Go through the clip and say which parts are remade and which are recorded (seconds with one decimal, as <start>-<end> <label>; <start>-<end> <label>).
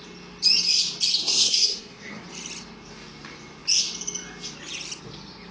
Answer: 0.0-1.2 recorded; 1.2-2.2 remade; 2.2-5.5 recorded